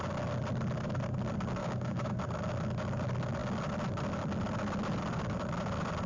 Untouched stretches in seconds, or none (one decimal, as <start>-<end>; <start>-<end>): 0.0-1.6; 2.2-6.1